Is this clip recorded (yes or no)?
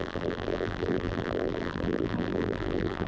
no